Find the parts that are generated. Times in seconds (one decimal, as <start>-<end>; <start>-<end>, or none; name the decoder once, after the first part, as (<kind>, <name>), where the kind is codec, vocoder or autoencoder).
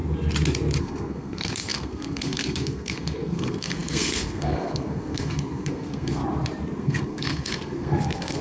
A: 0.8-6.2 (codec, SNAC); 6.8-8.4